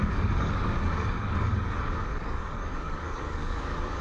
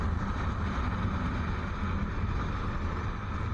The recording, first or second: second